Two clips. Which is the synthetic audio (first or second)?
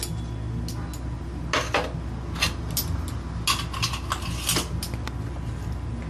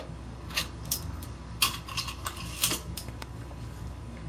second